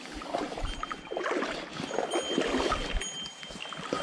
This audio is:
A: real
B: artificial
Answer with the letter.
A